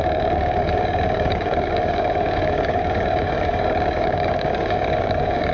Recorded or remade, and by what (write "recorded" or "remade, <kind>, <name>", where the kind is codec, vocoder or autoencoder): remade, codec, DAC